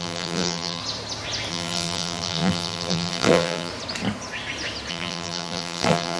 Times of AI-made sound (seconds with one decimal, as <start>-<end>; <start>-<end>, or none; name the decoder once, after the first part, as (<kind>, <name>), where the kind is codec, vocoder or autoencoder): 0.0-0.8 (vocoder, BigVGAN v2); 1.5-3.7; 4.9-6.2